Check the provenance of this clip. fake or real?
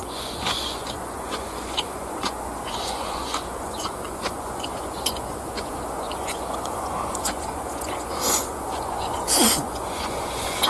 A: fake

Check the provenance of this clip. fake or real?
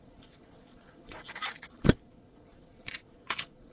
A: fake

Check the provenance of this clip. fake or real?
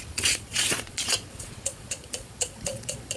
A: fake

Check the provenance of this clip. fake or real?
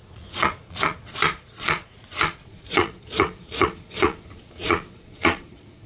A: fake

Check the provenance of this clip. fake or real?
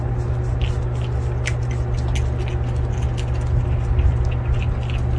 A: real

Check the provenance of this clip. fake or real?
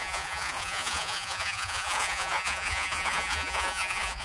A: fake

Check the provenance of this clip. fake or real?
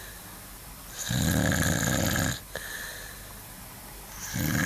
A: real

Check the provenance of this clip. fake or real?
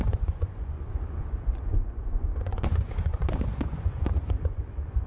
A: fake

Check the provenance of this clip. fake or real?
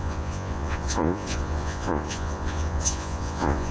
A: fake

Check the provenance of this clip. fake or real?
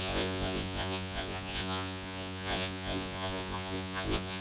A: fake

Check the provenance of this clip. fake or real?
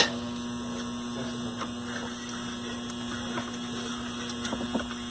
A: real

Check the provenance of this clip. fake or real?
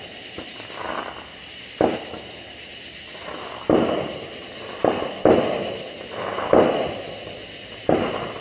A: real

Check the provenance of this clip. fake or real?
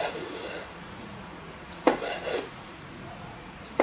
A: fake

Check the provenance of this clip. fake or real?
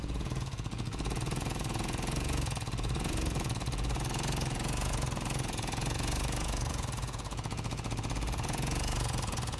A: fake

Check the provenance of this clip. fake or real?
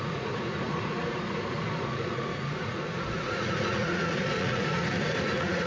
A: fake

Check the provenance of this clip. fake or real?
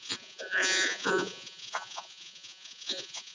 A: fake